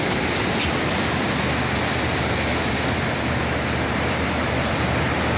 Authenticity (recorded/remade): recorded